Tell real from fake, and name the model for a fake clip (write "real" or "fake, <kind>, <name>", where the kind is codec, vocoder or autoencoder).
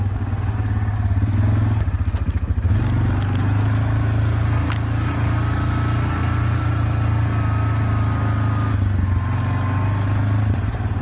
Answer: real